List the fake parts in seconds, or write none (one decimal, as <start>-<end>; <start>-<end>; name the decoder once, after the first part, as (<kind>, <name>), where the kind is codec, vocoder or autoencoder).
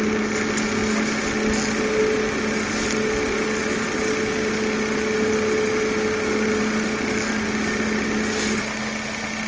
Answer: none